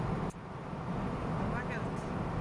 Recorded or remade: recorded